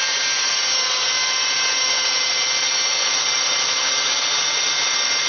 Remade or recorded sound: recorded